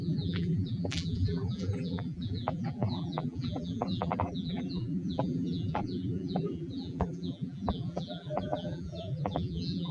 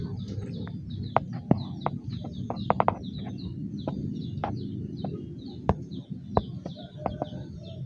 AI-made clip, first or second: first